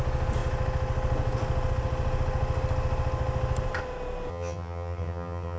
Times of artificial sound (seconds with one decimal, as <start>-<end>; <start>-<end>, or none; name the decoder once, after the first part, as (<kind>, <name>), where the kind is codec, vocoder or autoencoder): 4.3-5.6 (vocoder, HiFi-GAN)